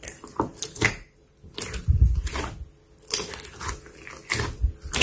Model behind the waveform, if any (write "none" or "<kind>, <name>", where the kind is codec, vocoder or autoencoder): none